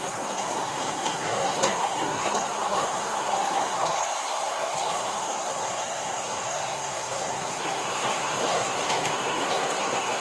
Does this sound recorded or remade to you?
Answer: remade